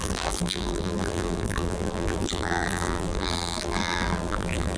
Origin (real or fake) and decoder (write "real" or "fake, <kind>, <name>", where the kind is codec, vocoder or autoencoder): fake, vocoder, BigVGAN v2